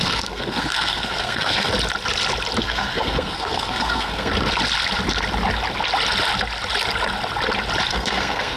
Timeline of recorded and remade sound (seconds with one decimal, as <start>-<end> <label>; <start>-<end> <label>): 0.0-1.7 remade; 1.7-2.6 recorded; 2.6-4.3 remade; 4.3-7.9 recorded; 7.9-8.6 remade